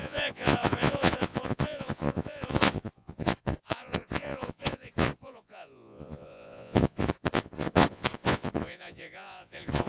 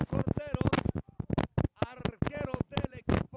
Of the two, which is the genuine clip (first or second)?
second